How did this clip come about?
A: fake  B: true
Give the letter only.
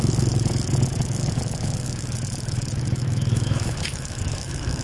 A